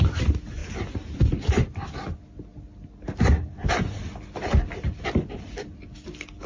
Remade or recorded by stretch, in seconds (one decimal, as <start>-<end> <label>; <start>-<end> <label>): 0.0-6.5 recorded